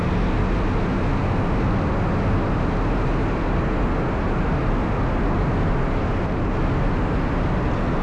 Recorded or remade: recorded